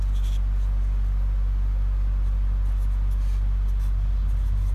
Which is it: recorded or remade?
recorded